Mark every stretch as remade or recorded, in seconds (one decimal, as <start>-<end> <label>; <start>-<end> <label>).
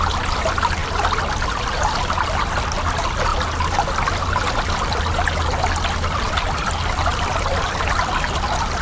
0.0-8.8 recorded